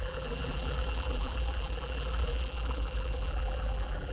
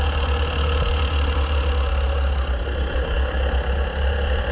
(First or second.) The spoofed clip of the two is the first